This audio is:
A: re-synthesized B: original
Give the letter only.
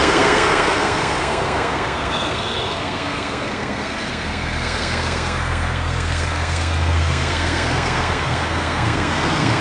A